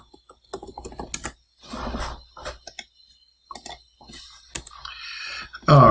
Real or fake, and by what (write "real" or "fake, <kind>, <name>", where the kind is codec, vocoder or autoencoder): real